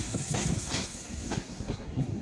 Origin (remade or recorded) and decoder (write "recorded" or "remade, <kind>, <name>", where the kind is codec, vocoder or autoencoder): remade, codec, SNAC